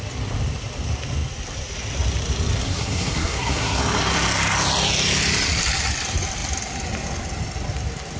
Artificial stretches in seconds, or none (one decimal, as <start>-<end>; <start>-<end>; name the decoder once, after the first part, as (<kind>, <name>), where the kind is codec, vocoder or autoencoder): 2.6-3.8 (codec, SNAC)